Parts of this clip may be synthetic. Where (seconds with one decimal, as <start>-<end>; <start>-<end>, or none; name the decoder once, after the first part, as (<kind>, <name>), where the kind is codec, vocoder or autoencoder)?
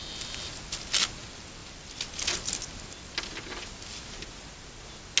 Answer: none